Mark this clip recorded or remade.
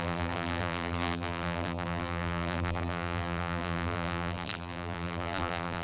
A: remade